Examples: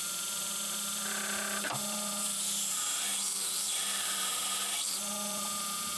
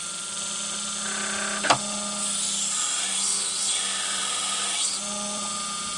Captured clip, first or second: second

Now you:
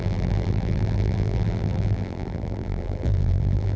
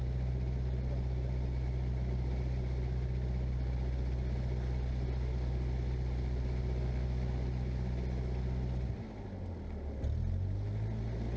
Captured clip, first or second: second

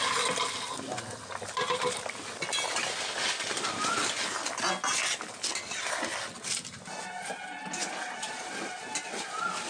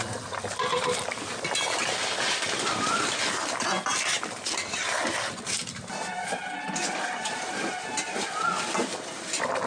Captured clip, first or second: first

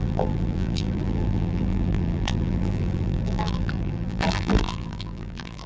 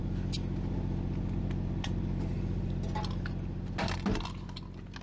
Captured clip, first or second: second